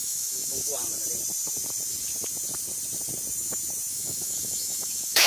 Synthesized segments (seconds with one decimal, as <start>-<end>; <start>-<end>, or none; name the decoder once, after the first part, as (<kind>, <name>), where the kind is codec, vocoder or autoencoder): 0.0-0.7 (autoencoder, DAC-VAE); 3.9-5.3